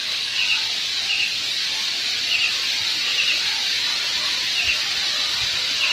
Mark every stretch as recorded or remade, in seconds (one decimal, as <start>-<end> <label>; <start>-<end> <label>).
0.0-5.9 recorded